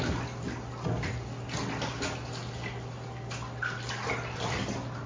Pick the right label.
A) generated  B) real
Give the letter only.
B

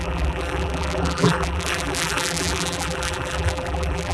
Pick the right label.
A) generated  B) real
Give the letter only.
A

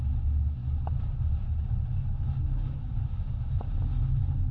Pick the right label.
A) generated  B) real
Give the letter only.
B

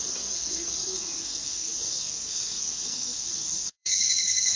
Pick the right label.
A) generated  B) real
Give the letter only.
A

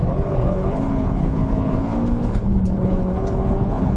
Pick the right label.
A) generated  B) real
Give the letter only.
A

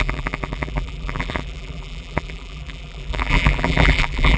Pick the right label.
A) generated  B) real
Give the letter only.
A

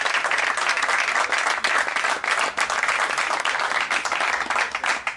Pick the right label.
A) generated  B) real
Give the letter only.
B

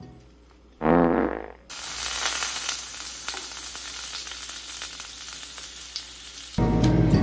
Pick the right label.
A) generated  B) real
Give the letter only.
B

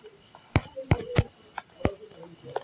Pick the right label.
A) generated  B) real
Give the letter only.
B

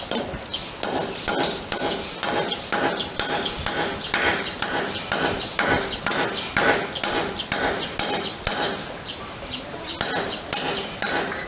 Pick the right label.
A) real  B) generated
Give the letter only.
A